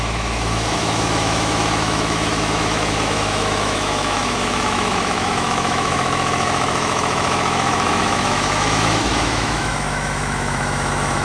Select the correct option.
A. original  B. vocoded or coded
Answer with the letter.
B